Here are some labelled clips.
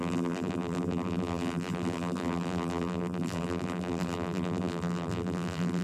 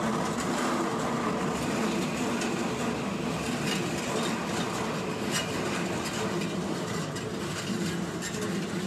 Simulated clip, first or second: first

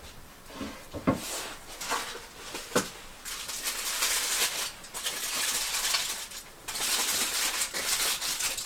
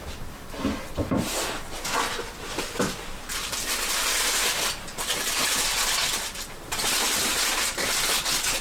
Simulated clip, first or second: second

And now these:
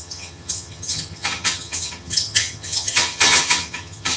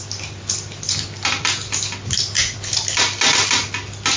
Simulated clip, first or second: first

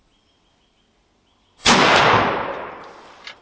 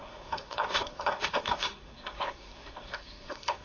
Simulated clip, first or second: second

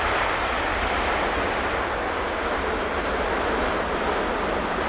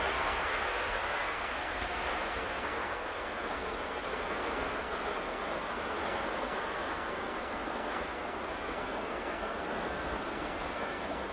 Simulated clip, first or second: second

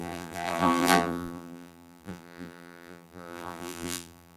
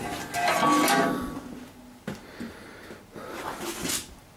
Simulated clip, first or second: first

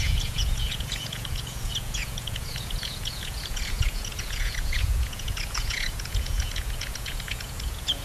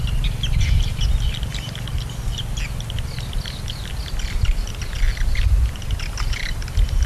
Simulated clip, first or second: first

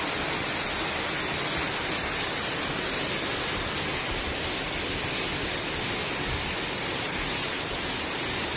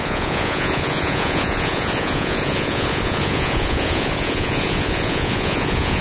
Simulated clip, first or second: second